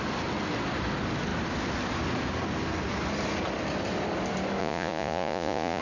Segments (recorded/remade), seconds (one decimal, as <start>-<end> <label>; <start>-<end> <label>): 0.0-4.6 recorded; 4.6-5.8 remade